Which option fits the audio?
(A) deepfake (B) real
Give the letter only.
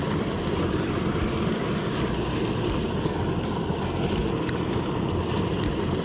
B